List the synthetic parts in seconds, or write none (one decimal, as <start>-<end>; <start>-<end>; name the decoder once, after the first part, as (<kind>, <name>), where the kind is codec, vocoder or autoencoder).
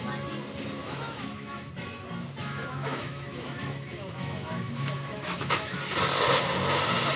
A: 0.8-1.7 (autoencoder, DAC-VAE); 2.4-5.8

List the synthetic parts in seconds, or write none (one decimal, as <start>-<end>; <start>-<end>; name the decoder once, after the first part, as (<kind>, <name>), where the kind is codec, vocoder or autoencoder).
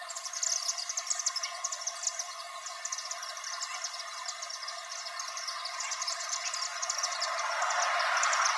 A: none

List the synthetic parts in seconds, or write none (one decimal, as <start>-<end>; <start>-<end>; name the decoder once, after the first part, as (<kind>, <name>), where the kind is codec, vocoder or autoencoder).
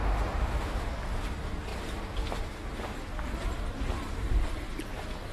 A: 0.0-0.9 (autoencoder, DAC-VAE)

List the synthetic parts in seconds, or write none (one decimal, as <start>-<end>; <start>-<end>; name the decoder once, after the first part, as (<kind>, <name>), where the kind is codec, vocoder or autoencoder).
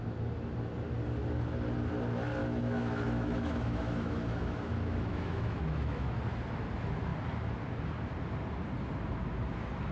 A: 2.4-6.2 (autoencoder, DAC-VAE)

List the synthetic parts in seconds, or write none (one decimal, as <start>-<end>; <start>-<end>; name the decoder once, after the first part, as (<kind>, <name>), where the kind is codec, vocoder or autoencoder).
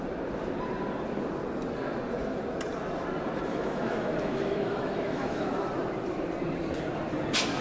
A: 3.5-5.5 (autoencoder, DAC-VAE)